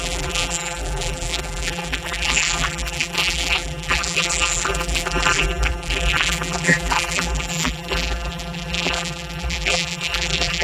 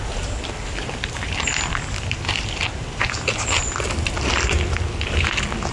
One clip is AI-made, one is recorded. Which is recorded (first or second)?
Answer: second